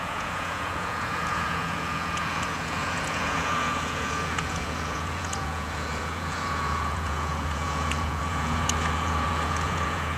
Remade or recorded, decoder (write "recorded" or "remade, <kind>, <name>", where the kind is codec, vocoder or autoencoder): remade, vocoder, Vocos